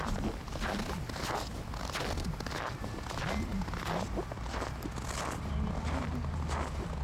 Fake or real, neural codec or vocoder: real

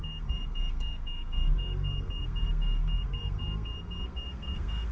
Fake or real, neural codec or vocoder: fake, codec, SNAC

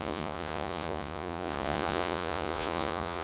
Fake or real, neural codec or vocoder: fake, vocoder, Vocos